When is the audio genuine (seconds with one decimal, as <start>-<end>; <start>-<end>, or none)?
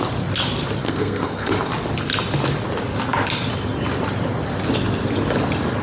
0.0-0.8; 1.5-5.8